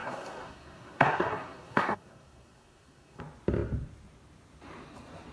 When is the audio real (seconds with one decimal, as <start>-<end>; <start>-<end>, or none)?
3.2-5.3